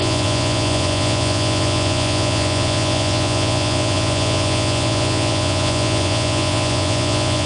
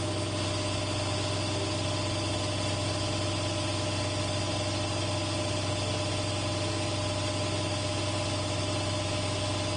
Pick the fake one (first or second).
first